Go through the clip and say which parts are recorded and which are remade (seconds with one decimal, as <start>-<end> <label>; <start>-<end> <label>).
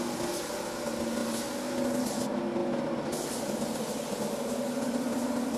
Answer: 0.0-2.6 recorded; 2.6-4.3 remade; 4.3-5.6 recorded